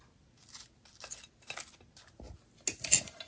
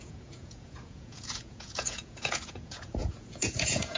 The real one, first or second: first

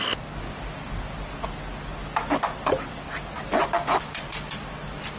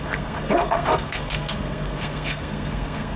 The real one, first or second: first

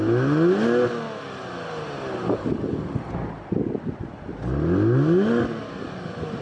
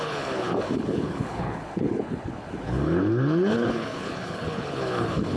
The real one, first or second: first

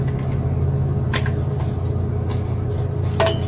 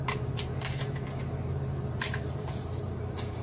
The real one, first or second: first